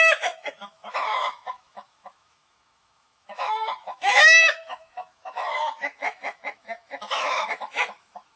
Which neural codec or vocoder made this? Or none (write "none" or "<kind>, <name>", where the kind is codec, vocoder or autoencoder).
autoencoder, DAC-VAE